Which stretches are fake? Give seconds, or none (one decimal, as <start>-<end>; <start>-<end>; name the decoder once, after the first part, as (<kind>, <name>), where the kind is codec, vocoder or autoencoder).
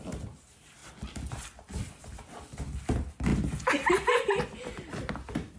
none